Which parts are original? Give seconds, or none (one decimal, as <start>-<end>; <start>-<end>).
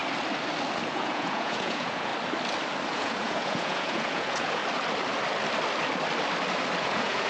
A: 0.0-0.9; 2.1-2.9; 4.6-6.8